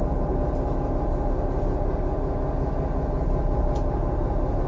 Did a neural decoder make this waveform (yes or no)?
no